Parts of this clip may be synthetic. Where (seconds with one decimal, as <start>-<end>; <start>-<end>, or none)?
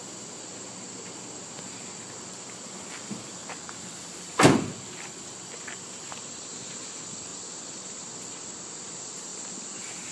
0.0-7.3; 8.3-9.3